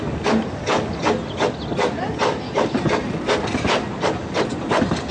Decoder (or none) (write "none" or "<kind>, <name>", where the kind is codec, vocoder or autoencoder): none